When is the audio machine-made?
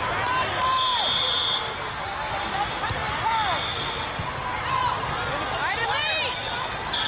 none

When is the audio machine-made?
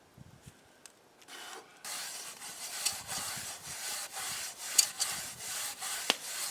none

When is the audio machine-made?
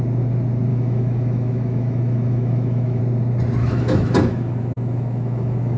0.7-3.0 (autoencoder, DAC-VAE); 3.6-5.8